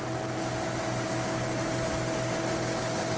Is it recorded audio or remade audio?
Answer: recorded